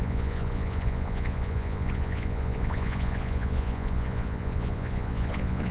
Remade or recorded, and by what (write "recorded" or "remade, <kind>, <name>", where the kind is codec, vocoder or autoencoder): remade, vocoder, Vocos